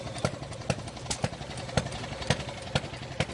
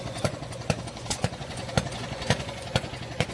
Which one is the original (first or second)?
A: first